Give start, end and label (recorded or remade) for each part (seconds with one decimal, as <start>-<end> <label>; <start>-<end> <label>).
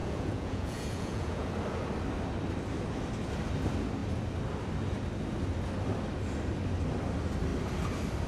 0.0-1.5 remade; 1.5-8.3 recorded